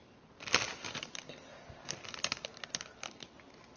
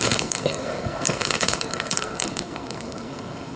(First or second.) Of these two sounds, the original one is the first